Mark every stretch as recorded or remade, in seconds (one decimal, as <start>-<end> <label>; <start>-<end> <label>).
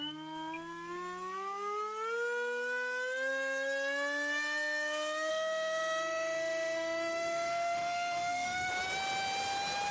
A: 0.0-5.3 recorded; 5.3-8.7 remade; 8.7-9.9 recorded